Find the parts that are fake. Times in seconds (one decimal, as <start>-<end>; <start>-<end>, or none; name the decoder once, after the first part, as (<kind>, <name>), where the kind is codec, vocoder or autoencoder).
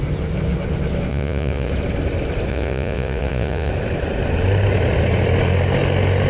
1.1-1.7 (vocoder, Vocos); 2.5-3.7